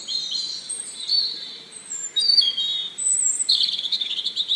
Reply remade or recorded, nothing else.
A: remade